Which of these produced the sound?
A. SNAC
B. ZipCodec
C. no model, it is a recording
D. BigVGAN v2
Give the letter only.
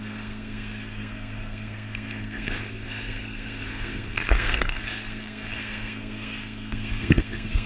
A